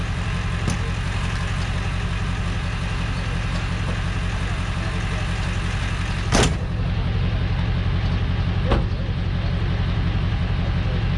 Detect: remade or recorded recorded